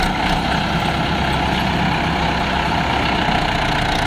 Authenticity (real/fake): real